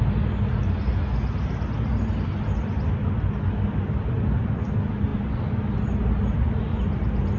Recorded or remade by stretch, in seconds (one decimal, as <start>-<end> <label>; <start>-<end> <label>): 0.0-7.4 recorded